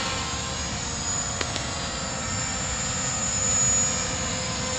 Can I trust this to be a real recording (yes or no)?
yes